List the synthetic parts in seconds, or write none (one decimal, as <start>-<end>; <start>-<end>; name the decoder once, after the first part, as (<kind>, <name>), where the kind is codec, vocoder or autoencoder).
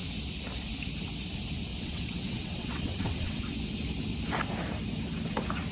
1.7-3.4 (vocoder, WaveNeXt)